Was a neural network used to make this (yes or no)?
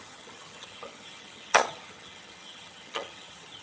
yes